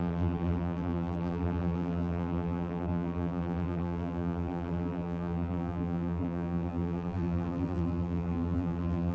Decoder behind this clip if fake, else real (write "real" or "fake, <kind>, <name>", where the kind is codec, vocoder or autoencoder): fake, vocoder, BigVGAN v2